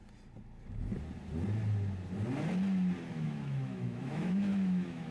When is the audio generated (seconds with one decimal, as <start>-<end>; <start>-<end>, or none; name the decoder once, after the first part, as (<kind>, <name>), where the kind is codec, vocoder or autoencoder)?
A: 3.1-5.1 (autoencoder, DAC-VAE)